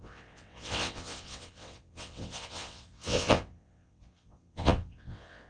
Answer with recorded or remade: remade